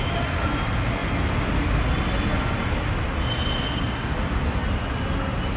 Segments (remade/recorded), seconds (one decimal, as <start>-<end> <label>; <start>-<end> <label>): 0.0-5.6 recorded